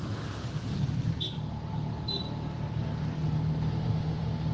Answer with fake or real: real